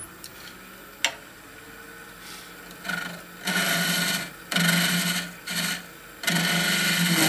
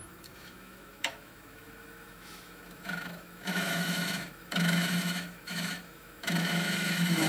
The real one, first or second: first